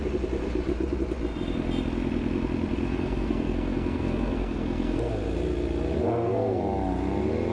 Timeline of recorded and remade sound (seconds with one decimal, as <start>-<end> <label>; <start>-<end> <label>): 0.0-2.9 recorded; 2.9-5.1 remade; 5.1-6.0 recorded; 6.0-6.6 remade; 6.6-7.5 recorded